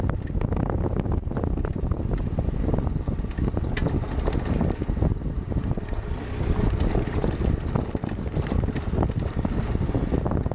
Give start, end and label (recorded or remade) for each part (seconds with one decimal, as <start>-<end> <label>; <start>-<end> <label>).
0.0-10.5 recorded